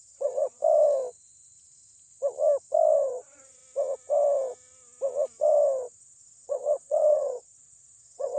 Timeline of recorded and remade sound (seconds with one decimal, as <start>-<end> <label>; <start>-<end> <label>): 0.0-0.6 remade; 0.6-3.1 recorded; 3.1-3.6 remade; 3.6-6.0 recorded; 6.0-8.4 remade